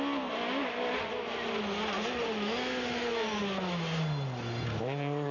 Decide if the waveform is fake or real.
real